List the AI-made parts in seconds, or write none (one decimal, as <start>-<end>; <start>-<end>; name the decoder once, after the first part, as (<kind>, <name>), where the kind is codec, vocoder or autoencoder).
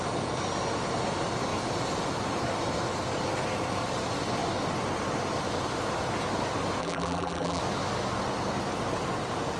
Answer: 6.8-7.6 (vocoder, BigVGAN v2)